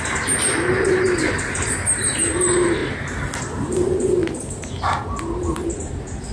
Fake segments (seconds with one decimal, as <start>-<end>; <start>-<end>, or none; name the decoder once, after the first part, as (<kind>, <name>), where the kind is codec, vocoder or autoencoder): 0.0-2.8 (vocoder, BigVGAN v2); 3.7-4.2; 5.2-6.3